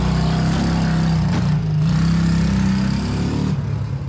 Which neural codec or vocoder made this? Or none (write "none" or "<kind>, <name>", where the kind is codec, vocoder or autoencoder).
none